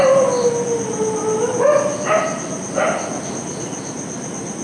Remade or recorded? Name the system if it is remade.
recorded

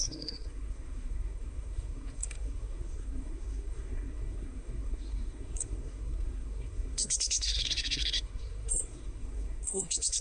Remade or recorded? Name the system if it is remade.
remade, codec, SNAC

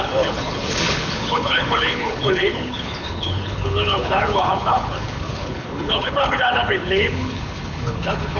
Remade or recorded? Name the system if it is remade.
remade, codec, HILCodec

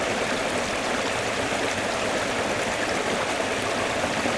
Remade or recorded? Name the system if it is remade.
recorded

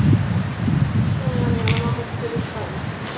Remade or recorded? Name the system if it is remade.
recorded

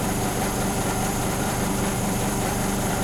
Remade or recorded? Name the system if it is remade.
remade, vocoder, BigVGAN v2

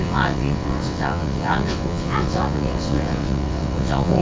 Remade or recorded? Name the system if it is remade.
remade, vocoder, WaveNeXt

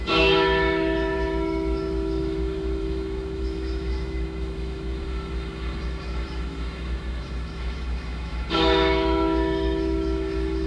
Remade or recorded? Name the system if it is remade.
remade, autoencoder, DAC-VAE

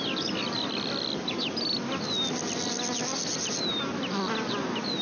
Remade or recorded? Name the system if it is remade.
recorded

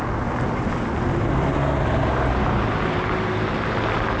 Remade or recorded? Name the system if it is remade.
recorded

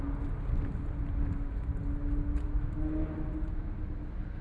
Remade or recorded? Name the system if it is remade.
recorded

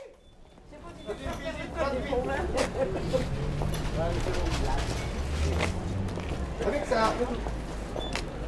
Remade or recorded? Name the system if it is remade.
recorded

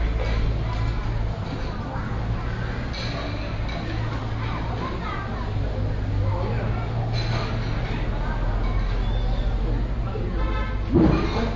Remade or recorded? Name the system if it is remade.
recorded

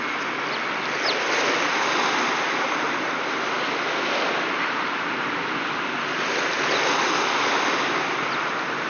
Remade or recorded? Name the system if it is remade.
recorded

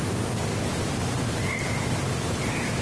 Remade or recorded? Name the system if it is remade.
recorded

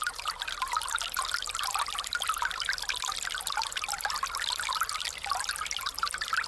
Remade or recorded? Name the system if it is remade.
recorded